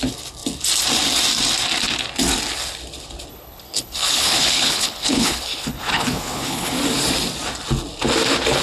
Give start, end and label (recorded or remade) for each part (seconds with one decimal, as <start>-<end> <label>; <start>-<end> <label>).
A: 0.0-3.3 recorded; 3.3-6.7 remade; 6.7-8.6 recorded